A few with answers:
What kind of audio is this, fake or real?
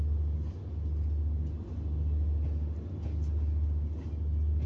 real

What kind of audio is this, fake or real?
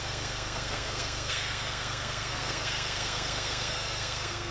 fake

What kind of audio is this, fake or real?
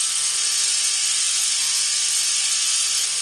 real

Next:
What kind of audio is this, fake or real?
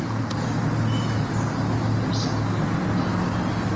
real